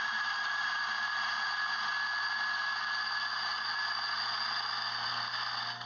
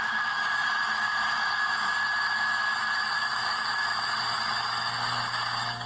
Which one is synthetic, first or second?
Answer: second